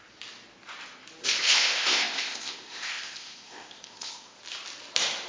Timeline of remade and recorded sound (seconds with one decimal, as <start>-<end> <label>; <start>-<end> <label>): 0.0-1.2 recorded; 1.2-4.4 remade; 4.4-5.3 recorded